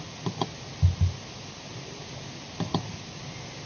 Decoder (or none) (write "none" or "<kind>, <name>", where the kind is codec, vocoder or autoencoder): none